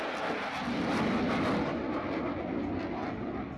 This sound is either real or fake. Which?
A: real